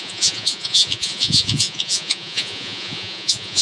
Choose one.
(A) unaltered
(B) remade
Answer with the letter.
B